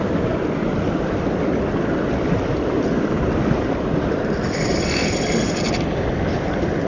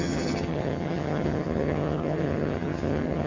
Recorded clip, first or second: first